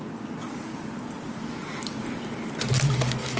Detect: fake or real real